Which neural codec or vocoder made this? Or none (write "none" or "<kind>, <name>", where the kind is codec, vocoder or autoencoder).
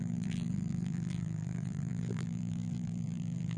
vocoder, BigVGAN v2